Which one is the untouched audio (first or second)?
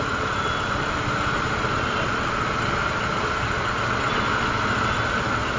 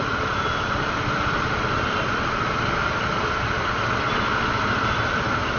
first